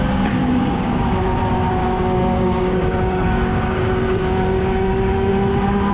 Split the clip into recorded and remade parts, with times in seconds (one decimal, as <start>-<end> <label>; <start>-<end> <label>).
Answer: 0.0-0.4 recorded; 0.4-1.4 remade; 1.4-1.8 recorded; 1.8-5.3 remade; 5.3-5.9 recorded